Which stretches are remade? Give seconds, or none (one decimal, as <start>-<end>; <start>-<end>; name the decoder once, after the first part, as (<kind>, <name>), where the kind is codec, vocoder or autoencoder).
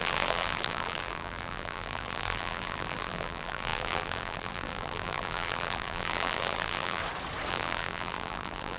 0.0-7.0 (vocoder, BigVGAN v2); 7.5-8.8